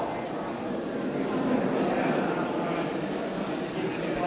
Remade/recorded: recorded